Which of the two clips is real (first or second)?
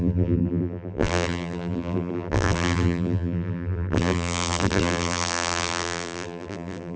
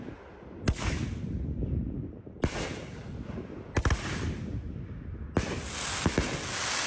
second